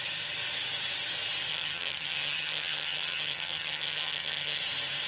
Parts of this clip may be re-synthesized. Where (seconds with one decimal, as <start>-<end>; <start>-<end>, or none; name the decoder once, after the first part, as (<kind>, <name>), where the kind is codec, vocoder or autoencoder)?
1.5-4.6 (vocoder, HiFi-GAN)